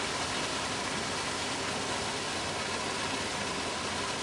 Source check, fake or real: real